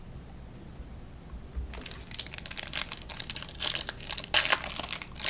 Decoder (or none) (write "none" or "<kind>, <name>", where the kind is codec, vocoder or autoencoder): none